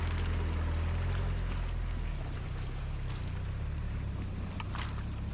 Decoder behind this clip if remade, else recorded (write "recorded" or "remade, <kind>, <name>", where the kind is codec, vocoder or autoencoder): recorded